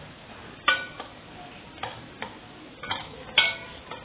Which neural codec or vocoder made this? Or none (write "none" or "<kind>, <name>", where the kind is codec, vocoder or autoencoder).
none